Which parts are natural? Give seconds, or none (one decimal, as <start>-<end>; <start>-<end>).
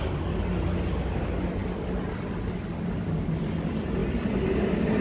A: 0.0-5.0